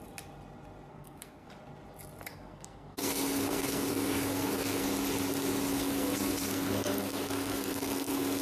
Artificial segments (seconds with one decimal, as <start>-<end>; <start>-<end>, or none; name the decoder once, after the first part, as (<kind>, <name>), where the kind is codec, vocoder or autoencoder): 0.9-1.5 (codec, SNAC); 2.3-4.9; 5.7-8.4